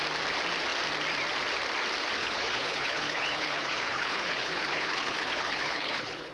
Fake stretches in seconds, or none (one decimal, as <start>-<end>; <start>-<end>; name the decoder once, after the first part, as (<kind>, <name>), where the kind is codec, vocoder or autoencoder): 2.2-6.3 (codec, HILCodec)

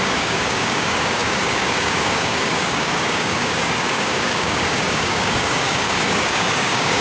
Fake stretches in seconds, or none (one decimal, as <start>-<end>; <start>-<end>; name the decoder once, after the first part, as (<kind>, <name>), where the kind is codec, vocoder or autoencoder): 0.0-7.0 (codec, DAC)

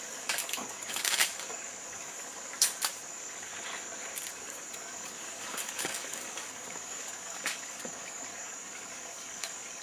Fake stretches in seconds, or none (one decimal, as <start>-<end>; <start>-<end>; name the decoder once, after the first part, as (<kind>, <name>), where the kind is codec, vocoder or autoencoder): 0.0-3.5 (codec, DAC); 4.3-9.8

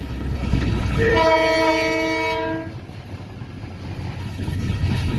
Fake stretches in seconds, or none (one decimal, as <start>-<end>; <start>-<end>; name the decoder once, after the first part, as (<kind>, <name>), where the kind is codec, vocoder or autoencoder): 0.0-1.1 (codec, HILCodec); 4.2-5.2

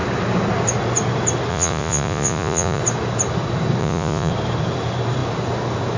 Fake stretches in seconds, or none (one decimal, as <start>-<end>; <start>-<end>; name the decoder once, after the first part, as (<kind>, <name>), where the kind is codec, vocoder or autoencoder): 1.5-2.8 (vocoder, Vocos); 3.8-4.3

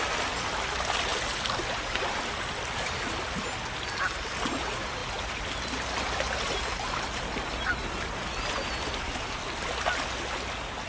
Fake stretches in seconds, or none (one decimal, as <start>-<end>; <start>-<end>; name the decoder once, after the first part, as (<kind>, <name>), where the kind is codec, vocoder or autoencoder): 1.1-3.0 (vocoder, BigVGAN v2)

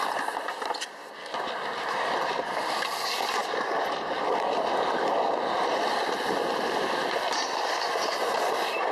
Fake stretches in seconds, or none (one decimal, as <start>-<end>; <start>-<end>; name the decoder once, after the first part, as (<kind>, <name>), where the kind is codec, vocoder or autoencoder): 3.4-8.2 (vocoder, BigVGAN v2)

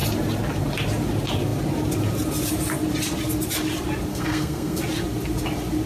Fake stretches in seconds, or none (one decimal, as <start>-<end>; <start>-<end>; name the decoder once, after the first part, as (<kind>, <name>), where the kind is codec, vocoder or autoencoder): 4.1-4.8 (codec, SNAC)